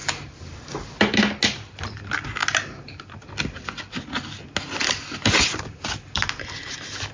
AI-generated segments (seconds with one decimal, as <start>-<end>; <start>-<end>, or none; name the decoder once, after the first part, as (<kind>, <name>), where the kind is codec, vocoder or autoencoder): none

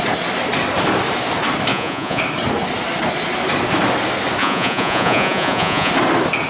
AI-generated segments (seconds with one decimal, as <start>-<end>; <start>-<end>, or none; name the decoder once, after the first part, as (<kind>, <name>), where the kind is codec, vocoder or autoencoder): 1.7-2.2 (vocoder, Vocos); 4.4-5.9

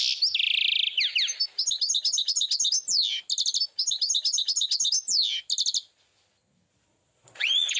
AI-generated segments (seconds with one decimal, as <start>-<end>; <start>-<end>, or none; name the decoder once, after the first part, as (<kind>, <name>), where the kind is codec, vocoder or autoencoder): 6.7-7.8 (vocoder, Vocos)

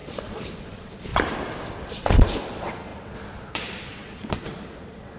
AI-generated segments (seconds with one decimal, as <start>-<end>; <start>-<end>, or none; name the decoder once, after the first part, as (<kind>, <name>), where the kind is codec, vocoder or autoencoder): 0.0-1.1 (vocoder, Vocos); 1.9-5.2